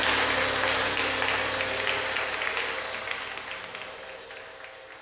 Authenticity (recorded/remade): recorded